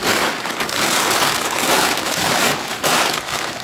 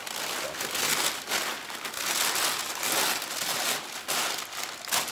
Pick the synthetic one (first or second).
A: first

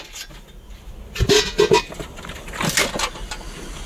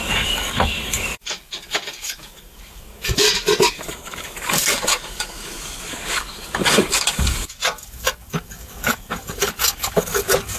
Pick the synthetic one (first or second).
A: second